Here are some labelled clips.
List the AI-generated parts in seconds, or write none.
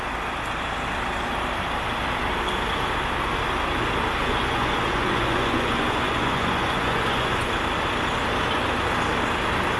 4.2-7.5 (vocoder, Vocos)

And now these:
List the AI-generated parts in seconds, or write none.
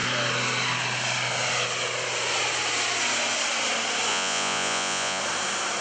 4.1-5.2 (vocoder, Vocos)